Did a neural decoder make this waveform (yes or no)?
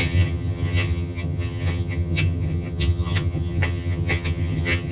yes